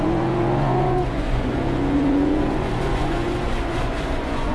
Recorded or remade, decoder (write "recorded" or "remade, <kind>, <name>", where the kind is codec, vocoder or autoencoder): remade, vocoder, Vocos